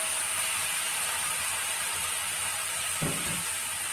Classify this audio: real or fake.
real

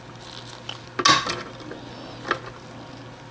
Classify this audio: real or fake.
real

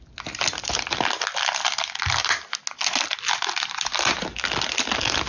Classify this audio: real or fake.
real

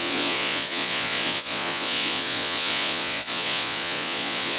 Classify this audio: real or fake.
fake